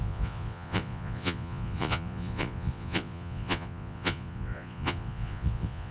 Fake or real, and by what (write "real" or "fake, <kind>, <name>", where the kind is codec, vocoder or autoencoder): fake, vocoder, Vocos